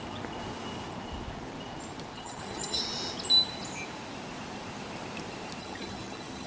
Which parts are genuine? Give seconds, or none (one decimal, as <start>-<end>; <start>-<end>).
0.0-2.1; 2.8-5.6